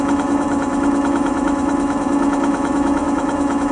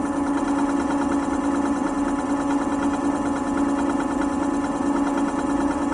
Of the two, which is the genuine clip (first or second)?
second